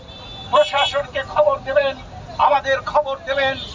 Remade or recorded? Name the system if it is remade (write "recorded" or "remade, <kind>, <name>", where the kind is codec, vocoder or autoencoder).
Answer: recorded